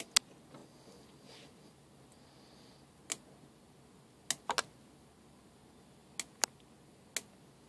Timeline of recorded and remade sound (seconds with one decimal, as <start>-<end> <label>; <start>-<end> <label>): 0.0-7.7 recorded